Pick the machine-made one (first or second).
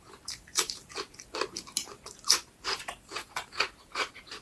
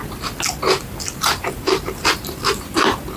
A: first